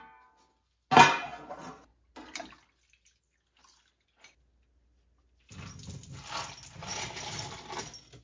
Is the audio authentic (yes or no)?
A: yes